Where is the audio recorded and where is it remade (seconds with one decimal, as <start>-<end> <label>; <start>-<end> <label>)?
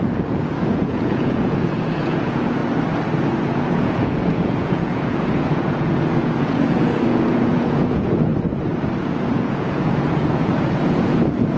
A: 0.0-2.6 remade; 2.6-3.4 recorded; 3.4-8.3 remade; 8.3-9.0 recorded; 9.0-11.6 remade